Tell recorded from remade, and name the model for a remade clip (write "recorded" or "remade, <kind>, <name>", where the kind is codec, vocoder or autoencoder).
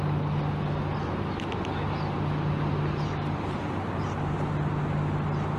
recorded